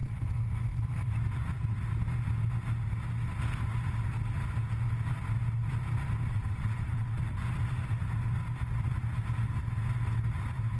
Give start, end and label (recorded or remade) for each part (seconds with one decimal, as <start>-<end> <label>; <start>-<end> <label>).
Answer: 0.0-6.3 recorded; 6.3-7.2 remade; 7.2-10.8 recorded